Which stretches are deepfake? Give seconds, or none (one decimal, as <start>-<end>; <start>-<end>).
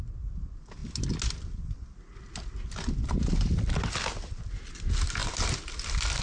none